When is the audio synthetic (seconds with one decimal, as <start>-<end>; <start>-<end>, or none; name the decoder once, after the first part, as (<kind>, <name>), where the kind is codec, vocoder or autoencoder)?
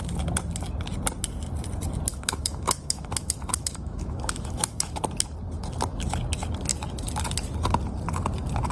2.1-5.0 (autoencoder, DAC-VAE)